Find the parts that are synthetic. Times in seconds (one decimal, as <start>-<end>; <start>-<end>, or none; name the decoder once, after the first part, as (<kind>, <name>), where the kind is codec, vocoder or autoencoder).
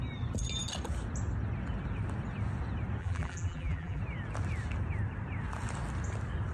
3.0-4.0 (vocoder, BigVGAN v2)